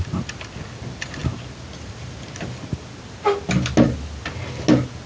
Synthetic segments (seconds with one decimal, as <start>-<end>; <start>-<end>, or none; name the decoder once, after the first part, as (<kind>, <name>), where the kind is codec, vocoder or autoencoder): none